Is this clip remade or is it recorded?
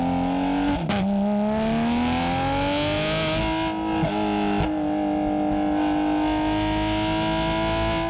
recorded